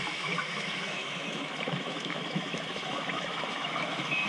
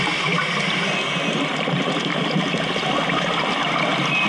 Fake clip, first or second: first